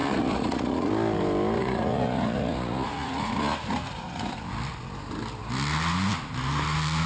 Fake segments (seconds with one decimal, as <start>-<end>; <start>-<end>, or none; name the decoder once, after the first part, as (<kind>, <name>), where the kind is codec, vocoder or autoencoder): 0.0-0.9 (vocoder, Vocos); 1.6-4.4